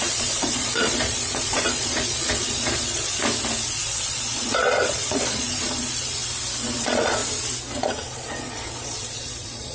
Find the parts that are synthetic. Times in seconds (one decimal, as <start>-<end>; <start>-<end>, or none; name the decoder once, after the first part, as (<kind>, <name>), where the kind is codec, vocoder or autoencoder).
0.0-3.2 (vocoder, Vocos); 3.7-6.2; 6.8-7.2; 7.8-9.7